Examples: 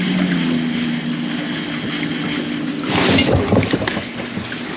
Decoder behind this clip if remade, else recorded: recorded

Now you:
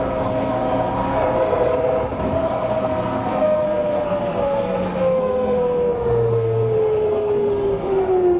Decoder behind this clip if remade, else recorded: remade, codec, SNAC